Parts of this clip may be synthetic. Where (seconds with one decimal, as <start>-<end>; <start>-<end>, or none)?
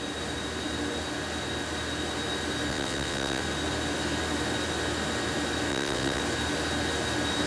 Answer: 2.7-3.4; 5.7-6.2